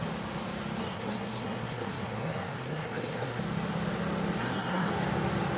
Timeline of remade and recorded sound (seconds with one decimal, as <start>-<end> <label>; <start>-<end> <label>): 0.0-0.8 recorded; 0.8-3.4 remade; 3.4-4.4 recorded; 4.4-4.9 remade; 4.9-5.6 recorded